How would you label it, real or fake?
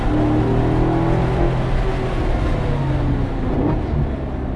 real